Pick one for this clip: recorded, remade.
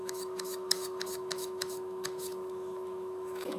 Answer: remade